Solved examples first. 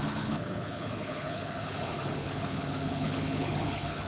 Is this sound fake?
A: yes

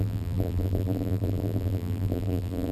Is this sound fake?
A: yes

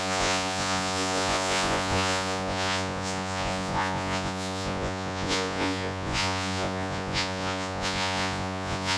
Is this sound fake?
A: yes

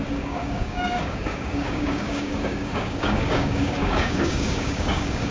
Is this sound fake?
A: yes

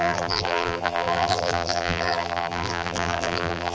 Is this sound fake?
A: yes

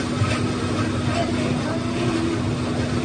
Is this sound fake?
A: no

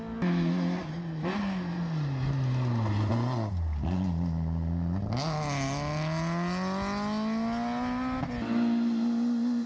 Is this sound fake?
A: no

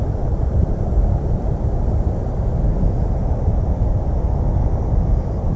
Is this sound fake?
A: yes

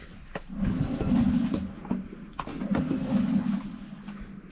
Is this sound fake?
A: no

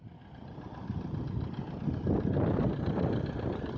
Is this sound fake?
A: no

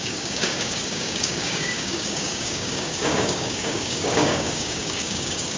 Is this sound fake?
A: yes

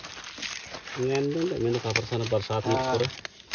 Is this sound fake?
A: no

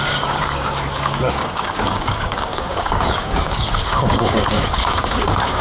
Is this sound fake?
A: yes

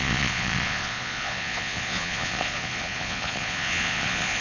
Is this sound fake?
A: yes